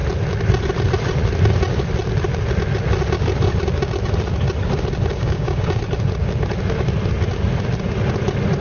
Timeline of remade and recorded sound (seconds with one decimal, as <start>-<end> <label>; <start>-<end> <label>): 0.0-5.1 recorded; 5.1-5.8 remade; 5.8-8.6 recorded